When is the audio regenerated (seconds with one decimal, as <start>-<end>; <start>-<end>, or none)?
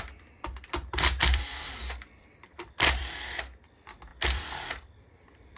1.2-3.0; 4.1-5.6